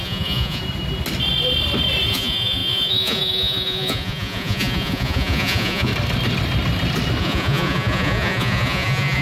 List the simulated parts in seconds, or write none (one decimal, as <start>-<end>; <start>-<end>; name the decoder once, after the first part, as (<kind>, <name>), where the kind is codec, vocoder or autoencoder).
0.0-0.6 (vocoder, Vocos); 2.1-5.9; 7.2-9.2